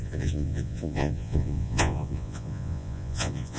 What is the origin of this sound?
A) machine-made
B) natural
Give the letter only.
A